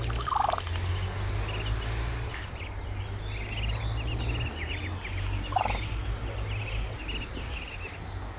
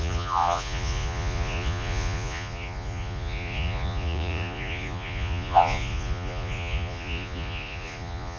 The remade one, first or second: second